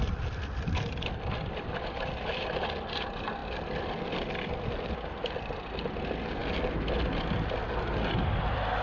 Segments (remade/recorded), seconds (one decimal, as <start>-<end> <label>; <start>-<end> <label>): 0.0-8.8 recorded